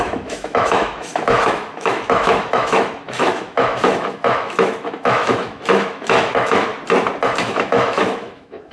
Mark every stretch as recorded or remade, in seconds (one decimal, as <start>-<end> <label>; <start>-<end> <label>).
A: 0.0-6.7 remade; 6.7-7.4 recorded; 7.4-8.7 remade